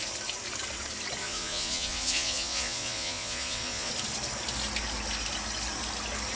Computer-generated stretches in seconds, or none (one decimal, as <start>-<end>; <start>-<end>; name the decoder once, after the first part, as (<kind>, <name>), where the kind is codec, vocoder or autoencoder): 1.2-3.9 (vocoder, Vocos)